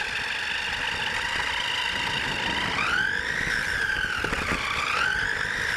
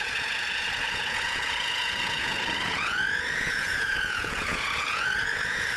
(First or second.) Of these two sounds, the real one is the first